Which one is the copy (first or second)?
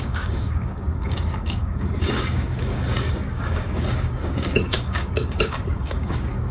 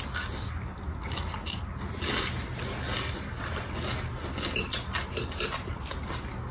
first